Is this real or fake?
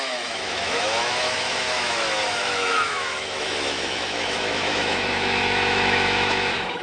fake